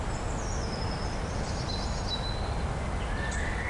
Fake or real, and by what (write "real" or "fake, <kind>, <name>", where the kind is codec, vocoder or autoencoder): real